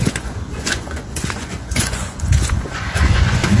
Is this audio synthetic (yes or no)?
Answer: yes